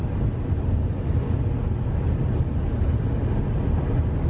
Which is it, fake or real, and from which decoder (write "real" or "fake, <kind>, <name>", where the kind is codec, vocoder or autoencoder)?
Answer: real